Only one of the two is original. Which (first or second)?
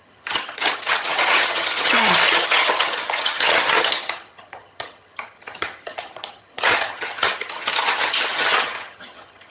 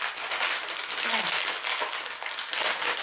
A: second